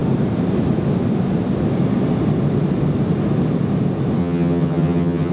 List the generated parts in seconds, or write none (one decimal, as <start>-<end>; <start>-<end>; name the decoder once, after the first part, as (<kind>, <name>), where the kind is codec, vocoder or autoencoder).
4.2-5.3 (vocoder, HiFi-GAN)